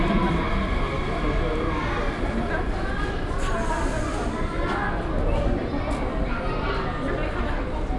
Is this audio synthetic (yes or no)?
no